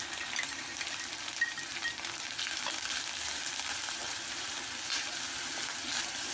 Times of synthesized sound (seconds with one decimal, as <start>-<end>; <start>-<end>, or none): 0.0-6.3